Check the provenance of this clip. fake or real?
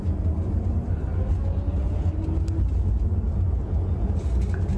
real